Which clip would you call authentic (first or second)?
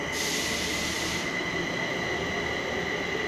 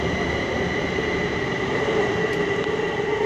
first